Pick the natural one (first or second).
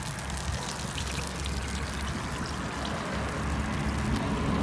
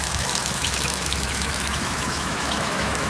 first